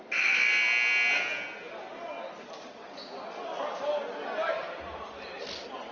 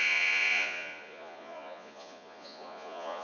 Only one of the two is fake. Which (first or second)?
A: second